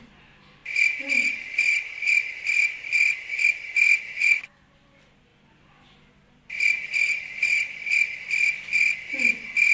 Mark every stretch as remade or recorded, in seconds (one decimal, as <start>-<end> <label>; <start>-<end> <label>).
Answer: 0.0-9.7 recorded